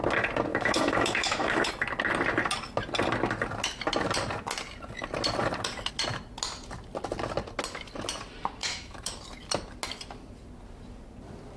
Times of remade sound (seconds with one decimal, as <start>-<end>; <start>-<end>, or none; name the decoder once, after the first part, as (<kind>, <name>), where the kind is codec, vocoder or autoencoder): 0.5-1.7 (autoencoder, DAC-VAE); 8.6-9.2